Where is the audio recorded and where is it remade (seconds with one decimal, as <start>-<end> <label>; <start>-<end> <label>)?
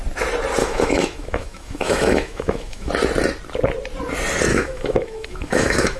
0.0-0.6 recorded; 0.6-2.9 remade; 2.9-4.5 recorded; 4.5-6.0 remade